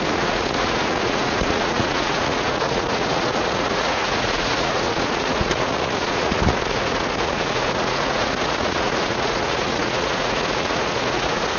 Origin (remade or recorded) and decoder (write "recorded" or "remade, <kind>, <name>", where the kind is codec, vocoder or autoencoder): remade, vocoder, Vocos